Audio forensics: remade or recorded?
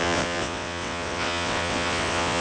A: remade